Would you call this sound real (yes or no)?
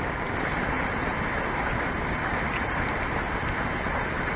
yes